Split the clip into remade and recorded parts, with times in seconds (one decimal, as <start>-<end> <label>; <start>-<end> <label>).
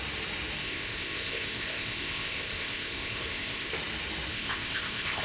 0.0-0.6 recorded; 0.6-3.7 remade; 3.7-4.3 recorded; 4.3-5.2 remade